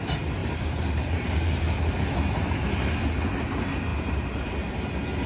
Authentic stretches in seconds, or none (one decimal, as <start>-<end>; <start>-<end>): 0.0-0.4; 1.9-3.9; 4.7-5.3